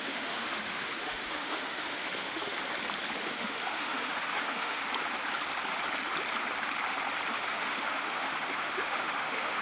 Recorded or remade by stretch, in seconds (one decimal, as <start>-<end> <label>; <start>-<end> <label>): 0.0-2.6 remade; 2.6-3.2 recorded; 3.2-4.8 remade; 4.8-7.3 recorded; 7.3-9.6 remade